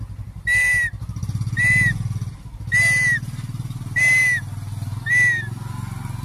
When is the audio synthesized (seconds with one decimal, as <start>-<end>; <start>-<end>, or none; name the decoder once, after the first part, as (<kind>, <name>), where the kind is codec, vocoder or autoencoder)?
none

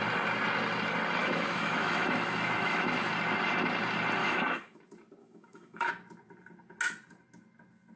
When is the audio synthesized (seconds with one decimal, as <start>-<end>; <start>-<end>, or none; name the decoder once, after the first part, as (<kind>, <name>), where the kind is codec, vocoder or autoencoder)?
1.2-3.1 (autoencoder, DAC-VAE); 4.2-4.8; 5.2-5.9